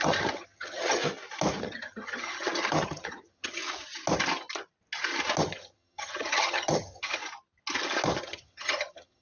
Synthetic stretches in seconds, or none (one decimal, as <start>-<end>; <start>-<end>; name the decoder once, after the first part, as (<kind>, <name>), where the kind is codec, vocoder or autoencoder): 0.0-1.0 (vocoder, HiFi-GAN); 1.6-3.6; 5.4-7.2; 8.2-9.2